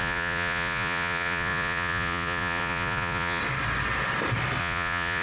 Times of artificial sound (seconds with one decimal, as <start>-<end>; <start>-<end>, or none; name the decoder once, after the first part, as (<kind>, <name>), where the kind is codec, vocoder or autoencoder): 0.0-3.4 (vocoder, Vocos); 4.6-5.2